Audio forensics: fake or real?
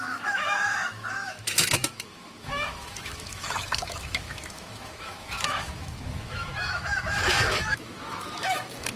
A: fake